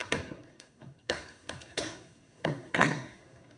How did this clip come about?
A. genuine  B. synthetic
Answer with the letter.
B